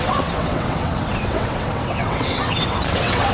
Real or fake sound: fake